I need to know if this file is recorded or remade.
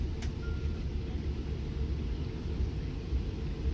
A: recorded